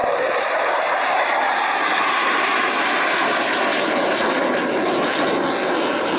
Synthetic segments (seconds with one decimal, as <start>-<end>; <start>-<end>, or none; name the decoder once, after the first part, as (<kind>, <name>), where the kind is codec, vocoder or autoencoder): 0.0-3.3 (vocoder, BigVGAN v2); 3.7-4.6